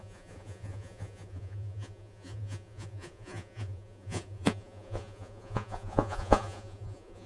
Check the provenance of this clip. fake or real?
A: fake